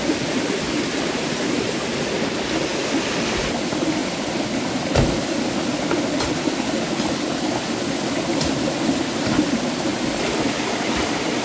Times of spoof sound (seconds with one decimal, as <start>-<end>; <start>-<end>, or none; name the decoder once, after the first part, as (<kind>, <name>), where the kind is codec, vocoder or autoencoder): 4.0-4.7 (vocoder, BigVGAN v2)